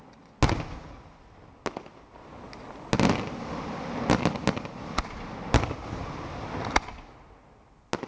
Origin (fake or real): real